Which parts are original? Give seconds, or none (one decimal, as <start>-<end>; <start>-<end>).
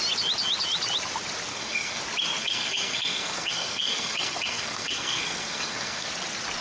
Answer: 0.0-1.5; 2.0-2.4; 6.1-6.6